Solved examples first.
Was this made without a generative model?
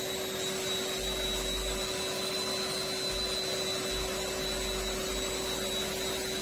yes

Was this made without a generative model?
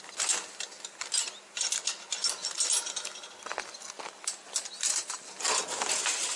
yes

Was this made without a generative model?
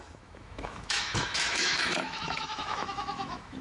no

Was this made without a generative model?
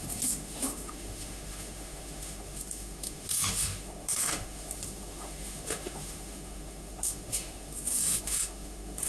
no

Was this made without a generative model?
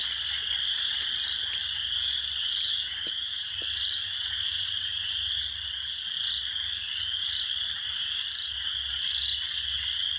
yes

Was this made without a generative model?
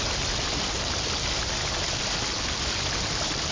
yes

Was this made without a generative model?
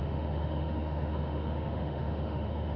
no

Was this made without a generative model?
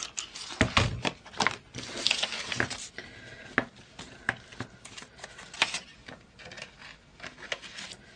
yes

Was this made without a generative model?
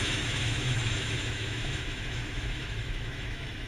no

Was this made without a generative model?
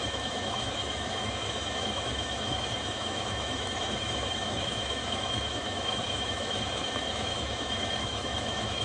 no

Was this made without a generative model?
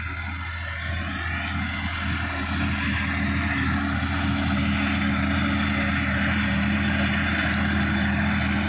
yes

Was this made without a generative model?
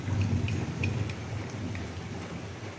yes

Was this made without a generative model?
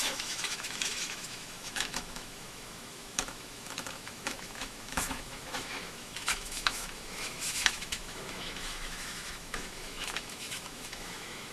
no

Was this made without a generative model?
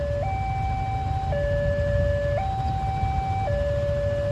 yes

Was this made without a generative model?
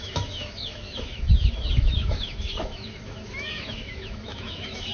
no